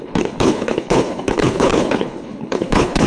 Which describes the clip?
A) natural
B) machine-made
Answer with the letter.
B